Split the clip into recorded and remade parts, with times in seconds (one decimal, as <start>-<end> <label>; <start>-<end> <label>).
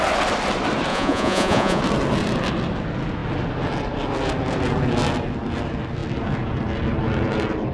0.0-0.9 recorded; 0.9-1.8 remade; 1.8-7.7 recorded